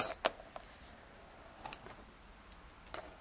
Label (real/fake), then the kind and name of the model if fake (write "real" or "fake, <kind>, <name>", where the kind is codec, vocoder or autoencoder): real